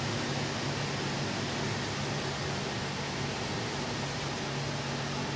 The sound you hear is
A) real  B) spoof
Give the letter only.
A